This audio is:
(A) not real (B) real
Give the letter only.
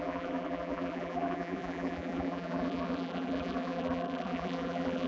A